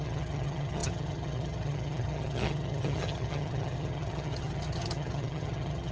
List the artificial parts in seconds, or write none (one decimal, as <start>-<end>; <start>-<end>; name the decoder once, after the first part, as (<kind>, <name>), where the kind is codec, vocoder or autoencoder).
0.0-5.9 (vocoder, HiFi-GAN)